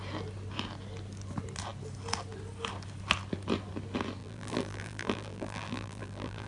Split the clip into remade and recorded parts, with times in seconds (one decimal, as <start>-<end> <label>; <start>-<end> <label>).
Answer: 0.0-4.2 recorded; 4.2-6.5 remade